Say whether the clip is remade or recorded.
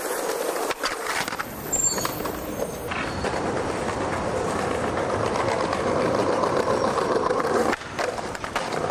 remade